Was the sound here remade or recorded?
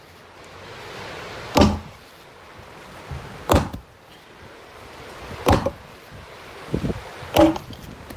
recorded